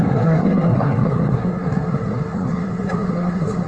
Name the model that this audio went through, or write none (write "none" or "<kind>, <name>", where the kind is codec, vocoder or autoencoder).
codec, SNAC